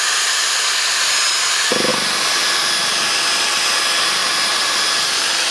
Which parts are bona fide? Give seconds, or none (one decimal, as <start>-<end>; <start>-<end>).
0.0-5.5

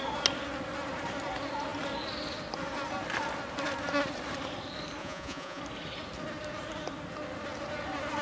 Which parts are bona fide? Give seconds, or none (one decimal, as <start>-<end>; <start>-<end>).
0.0-5.0; 5.6-8.2

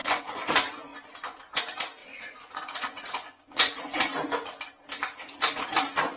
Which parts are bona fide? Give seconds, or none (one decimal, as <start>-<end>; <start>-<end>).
0.5-0.9; 1.6-2.0; 4.0-6.2